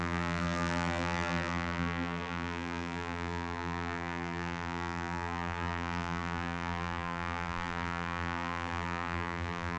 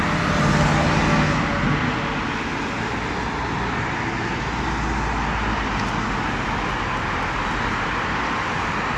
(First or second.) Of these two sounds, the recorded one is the second